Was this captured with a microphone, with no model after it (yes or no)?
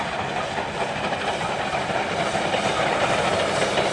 yes